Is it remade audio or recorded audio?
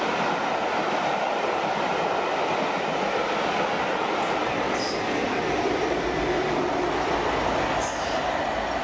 recorded